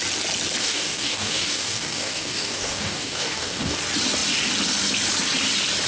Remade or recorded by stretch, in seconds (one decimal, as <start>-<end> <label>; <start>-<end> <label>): 0.0-0.6 recorded; 0.6-3.8 remade; 3.8-5.9 recorded